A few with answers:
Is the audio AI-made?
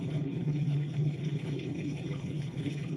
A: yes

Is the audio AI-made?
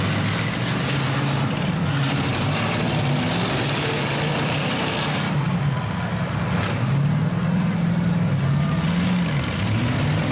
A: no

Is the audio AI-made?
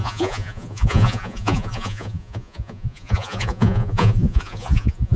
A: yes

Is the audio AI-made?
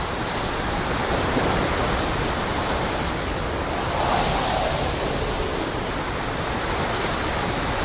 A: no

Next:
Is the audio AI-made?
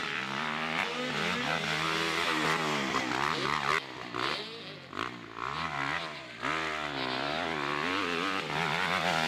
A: no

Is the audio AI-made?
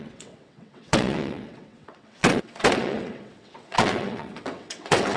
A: yes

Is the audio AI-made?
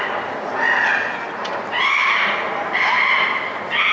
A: no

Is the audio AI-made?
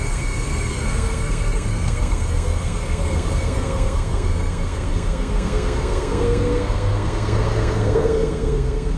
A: yes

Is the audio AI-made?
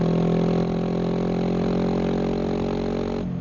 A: no